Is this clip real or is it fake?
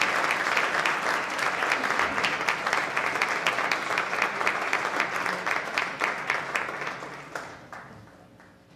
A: real